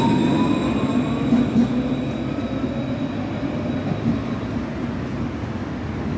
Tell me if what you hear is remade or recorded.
recorded